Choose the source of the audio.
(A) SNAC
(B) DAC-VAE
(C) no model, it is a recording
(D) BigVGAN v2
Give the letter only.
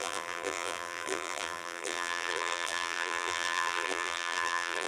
D